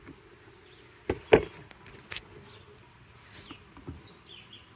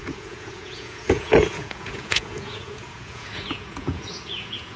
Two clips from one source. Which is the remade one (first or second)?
second